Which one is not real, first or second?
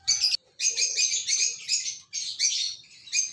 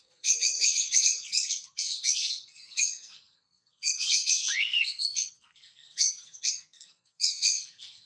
second